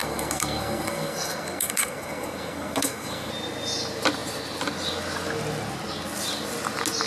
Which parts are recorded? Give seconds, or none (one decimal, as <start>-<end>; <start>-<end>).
3.3-7.1